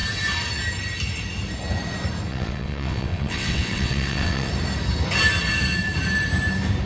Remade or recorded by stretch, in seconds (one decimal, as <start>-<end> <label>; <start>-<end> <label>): 0.0-2.3 recorded; 2.3-4.5 remade; 4.5-6.9 recorded